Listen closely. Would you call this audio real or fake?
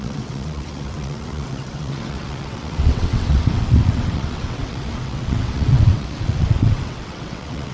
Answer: fake